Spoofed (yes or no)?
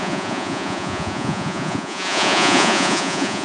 yes